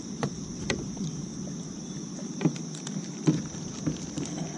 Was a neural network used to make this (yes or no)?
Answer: yes